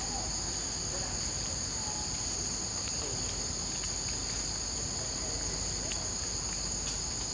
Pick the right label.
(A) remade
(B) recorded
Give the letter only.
B